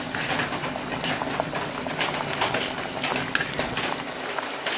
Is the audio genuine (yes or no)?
yes